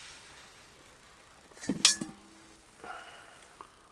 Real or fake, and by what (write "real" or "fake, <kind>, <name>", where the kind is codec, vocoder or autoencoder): real